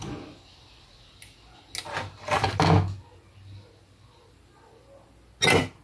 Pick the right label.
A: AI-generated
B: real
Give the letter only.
B